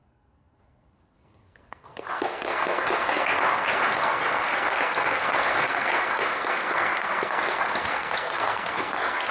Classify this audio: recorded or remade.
remade